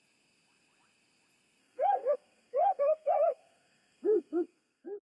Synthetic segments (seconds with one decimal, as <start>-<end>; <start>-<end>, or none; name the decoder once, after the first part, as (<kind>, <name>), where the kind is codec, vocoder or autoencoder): 1.6-5.1 (codec, SNAC)